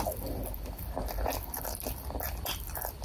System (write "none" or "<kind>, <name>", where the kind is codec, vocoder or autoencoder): none